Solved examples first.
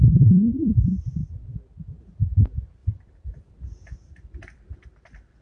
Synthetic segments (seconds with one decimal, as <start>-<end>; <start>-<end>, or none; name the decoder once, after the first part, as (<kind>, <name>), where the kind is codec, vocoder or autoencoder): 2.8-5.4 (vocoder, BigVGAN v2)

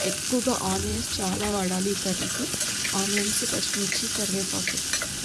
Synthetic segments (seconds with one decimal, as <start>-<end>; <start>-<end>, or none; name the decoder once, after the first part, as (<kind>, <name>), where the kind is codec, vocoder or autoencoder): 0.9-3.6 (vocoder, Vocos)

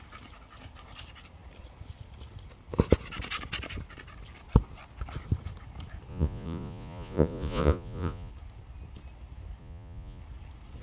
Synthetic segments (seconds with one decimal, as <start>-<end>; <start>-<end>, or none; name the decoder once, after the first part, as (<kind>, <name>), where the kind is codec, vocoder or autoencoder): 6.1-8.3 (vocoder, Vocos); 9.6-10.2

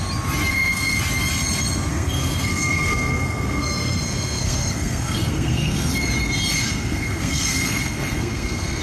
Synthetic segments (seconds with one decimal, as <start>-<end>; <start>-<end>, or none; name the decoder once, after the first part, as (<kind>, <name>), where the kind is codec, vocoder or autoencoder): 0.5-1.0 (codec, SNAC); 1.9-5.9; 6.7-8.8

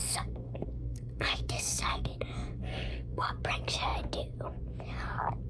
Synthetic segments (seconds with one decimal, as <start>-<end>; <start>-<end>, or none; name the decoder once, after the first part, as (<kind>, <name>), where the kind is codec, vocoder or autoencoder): 0.0-3.3 (codec, SNAC)